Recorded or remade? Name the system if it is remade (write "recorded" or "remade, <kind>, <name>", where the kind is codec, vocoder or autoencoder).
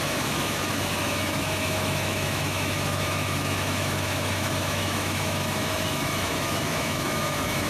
remade, autoencoder, DAC-VAE